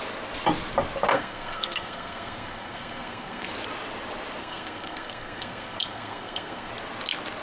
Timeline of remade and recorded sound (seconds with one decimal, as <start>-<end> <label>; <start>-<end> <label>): 0.0-1.1 recorded; 1.1-3.5 remade; 3.5-4.4 recorded; 4.4-6.7 remade; 6.7-7.4 recorded